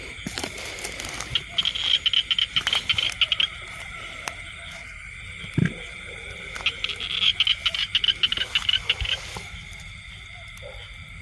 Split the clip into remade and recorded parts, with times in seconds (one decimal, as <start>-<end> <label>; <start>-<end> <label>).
0.0-11.2 recorded